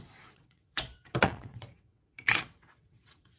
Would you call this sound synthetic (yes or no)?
yes